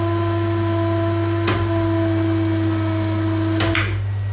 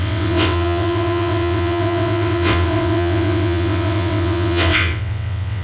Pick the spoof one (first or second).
second